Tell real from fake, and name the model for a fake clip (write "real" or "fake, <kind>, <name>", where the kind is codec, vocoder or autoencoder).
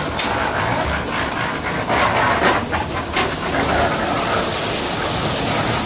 real